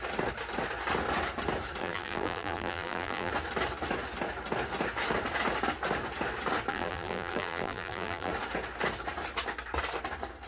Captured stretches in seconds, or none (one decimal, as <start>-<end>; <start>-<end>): 0.0-1.8; 3.3-6.7; 8.3-10.5